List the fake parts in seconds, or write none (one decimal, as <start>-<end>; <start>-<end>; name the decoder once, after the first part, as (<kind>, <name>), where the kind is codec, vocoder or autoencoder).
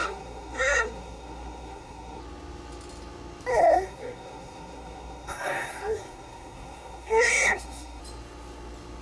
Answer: 0.0-2.2 (codec, SNAC); 3.5-8.0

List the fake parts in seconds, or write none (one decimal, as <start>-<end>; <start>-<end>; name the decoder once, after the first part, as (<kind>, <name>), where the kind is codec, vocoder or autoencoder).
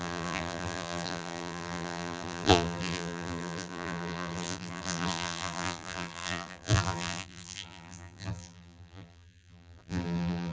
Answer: 0.0-10.5 (vocoder, BigVGAN v2)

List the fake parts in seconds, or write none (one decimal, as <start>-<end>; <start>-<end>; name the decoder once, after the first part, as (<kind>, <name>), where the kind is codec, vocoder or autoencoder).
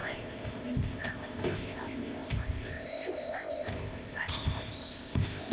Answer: 0.0-5.5 (codec, ZipCodec)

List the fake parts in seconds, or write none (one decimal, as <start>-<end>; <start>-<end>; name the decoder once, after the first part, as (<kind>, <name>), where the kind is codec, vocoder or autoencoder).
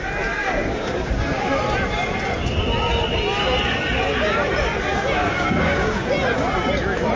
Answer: 0.4-1.5 (codec, DAC); 5.2-6.1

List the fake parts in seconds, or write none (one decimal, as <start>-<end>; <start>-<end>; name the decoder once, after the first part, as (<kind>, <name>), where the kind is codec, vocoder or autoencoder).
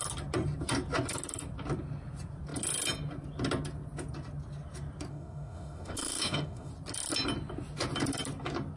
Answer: 5.1-6.7 (autoencoder, DAC-VAE)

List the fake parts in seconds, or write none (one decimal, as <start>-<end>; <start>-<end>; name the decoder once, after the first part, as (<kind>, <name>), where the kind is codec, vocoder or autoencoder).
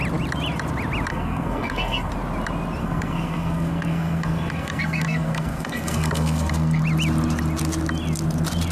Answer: 1.1-2.1 (codec, SNAC); 2.8-6.8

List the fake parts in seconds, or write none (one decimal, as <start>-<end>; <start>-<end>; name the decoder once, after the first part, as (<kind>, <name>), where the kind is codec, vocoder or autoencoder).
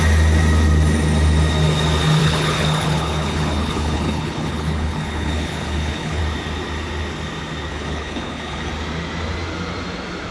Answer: 2.2-6.2 (codec, HILCodec); 7.7-8.7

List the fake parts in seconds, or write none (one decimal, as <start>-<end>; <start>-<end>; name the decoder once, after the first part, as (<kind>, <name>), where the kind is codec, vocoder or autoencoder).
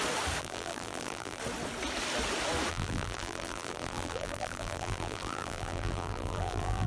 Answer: 0.4-1.4 (vocoder, BigVGAN v2); 2.7-6.9